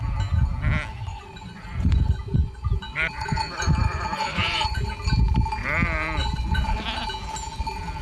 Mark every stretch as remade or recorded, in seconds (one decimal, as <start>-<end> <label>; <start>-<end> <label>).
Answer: 0.0-1.1 recorded; 1.1-4.9 remade; 4.9-6.2 recorded; 6.2-6.8 remade; 6.8-8.0 recorded